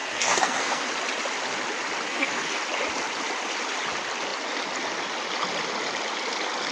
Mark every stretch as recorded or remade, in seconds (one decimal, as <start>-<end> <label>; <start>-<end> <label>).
0.0-0.9 remade; 0.9-2.1 recorded; 2.1-2.6 remade; 2.6-6.7 recorded